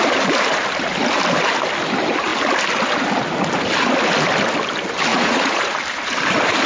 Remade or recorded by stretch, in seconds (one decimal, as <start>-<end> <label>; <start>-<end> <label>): 0.0-5.1 recorded; 5.1-5.7 remade; 5.7-6.7 recorded